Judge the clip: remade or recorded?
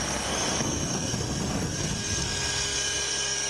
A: remade